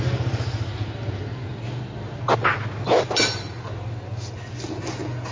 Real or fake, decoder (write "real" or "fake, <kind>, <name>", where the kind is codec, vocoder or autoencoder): real